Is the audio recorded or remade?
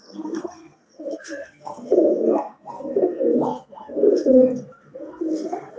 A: remade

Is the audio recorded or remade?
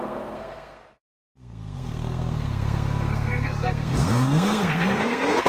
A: remade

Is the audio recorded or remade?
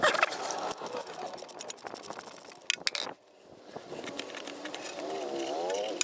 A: recorded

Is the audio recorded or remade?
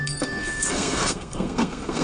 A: remade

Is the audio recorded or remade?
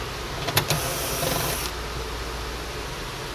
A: recorded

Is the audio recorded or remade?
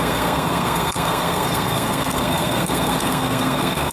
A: remade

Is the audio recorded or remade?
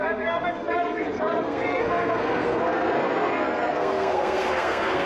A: remade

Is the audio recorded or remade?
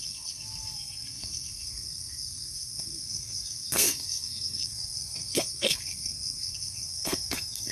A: remade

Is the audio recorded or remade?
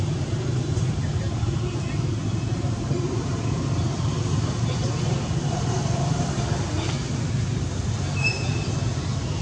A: recorded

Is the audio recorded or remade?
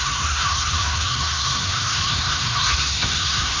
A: remade